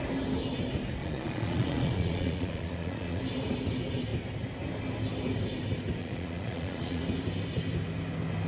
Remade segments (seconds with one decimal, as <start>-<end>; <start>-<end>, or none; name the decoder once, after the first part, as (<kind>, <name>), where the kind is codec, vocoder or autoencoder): 1.0-3.2 (vocoder, Vocos); 6.0-7.0